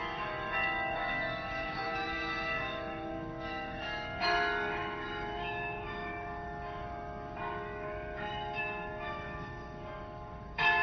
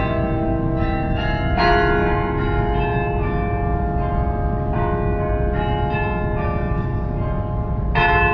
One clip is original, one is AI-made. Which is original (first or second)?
second